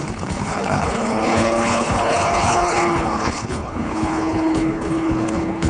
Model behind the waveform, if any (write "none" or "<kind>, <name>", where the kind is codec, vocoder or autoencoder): codec, HILCodec